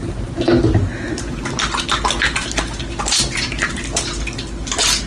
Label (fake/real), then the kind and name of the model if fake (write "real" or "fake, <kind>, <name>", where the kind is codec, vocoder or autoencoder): real